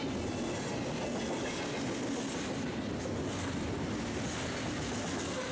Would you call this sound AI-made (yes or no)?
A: no